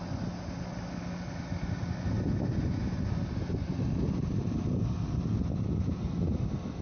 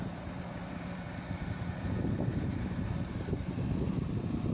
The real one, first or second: first